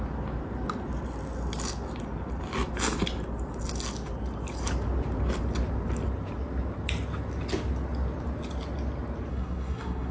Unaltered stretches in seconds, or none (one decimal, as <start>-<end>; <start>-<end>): 0.0-9.3